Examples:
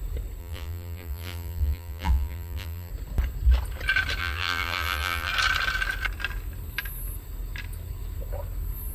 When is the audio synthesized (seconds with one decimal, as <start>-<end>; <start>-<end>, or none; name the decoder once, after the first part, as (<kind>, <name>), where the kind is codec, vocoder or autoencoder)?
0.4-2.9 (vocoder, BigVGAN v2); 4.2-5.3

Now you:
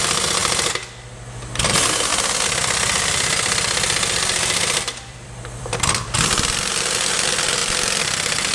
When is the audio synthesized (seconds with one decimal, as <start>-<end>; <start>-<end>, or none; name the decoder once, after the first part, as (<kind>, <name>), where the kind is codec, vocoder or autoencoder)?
2.1-7.1 (vocoder, BigVGAN v2); 7.6-8.5

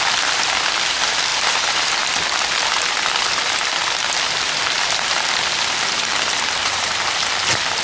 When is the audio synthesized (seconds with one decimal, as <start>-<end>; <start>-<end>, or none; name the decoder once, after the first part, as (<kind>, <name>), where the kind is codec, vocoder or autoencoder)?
1.3-2.1 (vocoder, BigVGAN v2); 6.6-7.3